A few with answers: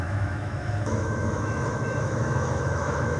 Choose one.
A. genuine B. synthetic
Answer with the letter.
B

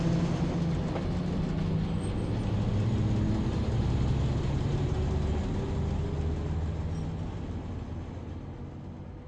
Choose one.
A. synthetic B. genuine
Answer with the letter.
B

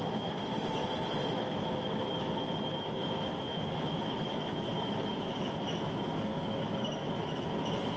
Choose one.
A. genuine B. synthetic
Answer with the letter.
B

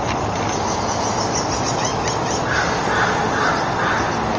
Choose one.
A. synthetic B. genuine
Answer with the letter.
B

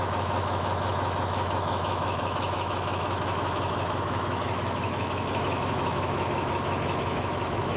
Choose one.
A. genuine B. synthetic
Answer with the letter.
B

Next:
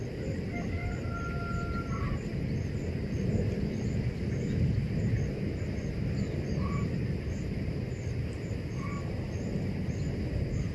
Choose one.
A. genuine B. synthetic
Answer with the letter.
A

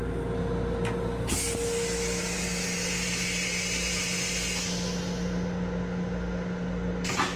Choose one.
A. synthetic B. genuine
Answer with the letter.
B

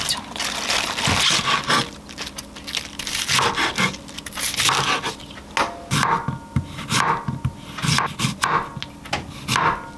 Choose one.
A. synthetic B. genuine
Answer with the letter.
B